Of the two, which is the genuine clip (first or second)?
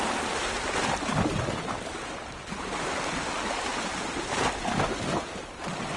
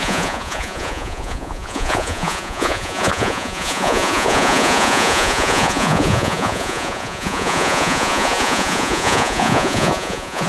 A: first